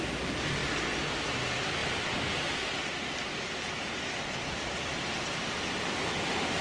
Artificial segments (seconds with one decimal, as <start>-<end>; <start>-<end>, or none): none